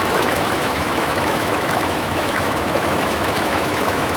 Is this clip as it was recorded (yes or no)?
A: no